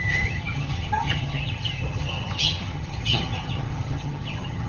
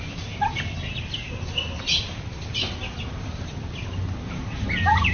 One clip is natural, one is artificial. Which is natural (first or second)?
second